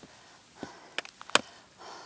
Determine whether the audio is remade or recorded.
recorded